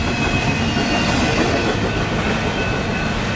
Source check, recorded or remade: recorded